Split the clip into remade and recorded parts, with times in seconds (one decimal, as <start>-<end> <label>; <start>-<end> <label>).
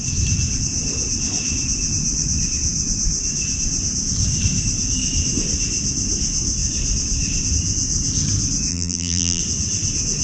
0.0-8.7 recorded; 8.7-9.4 remade; 9.4-10.2 recorded